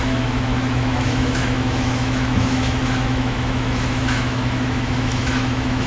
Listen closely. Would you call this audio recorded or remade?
remade